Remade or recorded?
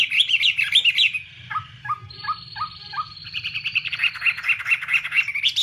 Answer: recorded